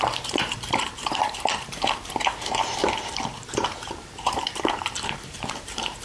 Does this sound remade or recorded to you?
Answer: remade